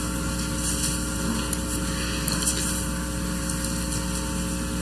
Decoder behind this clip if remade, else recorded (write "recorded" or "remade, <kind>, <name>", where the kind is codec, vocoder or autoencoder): recorded